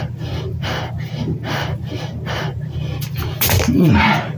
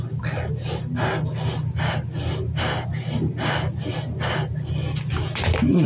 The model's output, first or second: first